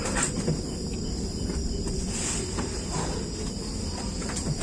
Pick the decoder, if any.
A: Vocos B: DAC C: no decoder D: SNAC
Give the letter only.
C